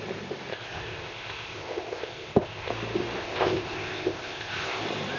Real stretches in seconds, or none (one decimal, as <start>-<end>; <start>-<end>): 0.0-0.5; 2.7-3.2; 4.8-5.2